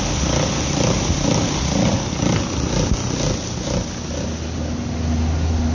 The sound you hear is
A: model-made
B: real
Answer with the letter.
B